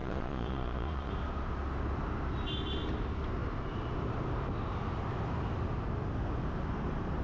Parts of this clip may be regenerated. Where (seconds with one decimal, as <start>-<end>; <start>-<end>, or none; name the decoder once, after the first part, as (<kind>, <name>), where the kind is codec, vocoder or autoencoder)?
0.0-1.1 (vocoder, Vocos)